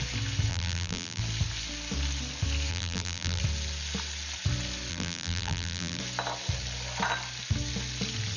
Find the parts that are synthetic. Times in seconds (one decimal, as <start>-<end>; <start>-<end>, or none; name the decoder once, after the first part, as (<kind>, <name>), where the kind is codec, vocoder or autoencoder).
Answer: 0.5-1.2 (vocoder, BigVGAN v2); 2.7-3.4; 4.9-6.0